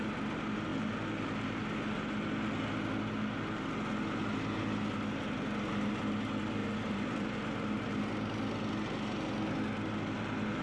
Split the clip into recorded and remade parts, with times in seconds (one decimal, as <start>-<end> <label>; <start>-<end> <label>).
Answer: 0.0-6.6 recorded; 6.6-7.8 remade; 7.8-10.6 recorded